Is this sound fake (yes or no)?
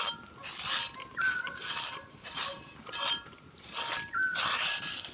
no